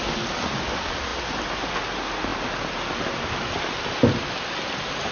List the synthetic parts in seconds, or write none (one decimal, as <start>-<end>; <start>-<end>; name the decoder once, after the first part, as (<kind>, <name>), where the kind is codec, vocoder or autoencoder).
none